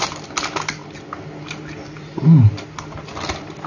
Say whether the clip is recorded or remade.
recorded